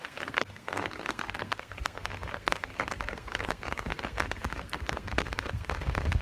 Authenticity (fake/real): fake